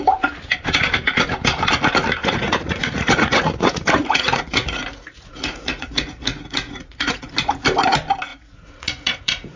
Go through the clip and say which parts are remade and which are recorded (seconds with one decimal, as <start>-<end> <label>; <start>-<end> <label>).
0.0-2.2 recorded; 2.2-7.3 remade; 7.3-8.3 recorded; 8.3-9.6 remade